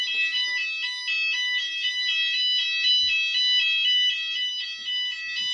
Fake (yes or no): no